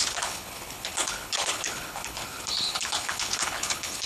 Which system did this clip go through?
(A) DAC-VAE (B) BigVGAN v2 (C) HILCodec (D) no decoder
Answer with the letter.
C